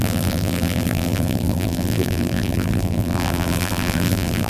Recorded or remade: remade